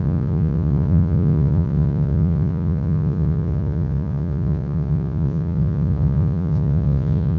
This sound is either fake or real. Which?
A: fake